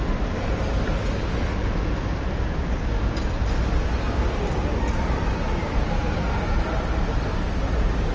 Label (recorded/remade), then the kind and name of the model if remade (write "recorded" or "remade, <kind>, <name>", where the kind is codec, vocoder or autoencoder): recorded